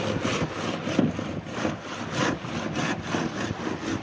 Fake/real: real